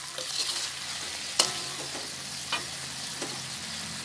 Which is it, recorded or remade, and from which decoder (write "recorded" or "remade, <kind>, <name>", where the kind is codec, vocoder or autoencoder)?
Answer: recorded